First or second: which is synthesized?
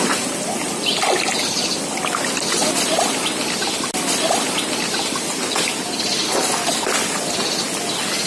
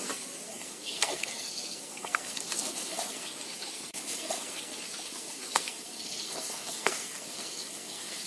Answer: second